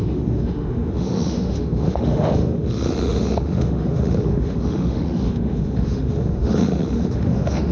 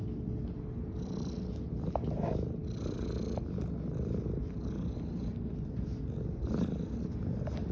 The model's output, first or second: first